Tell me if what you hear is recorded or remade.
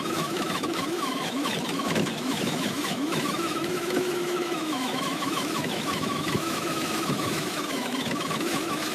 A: remade